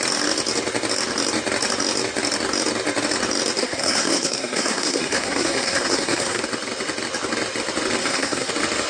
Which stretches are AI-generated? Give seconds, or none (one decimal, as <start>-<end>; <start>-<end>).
3.6-6.4; 8.0-8.5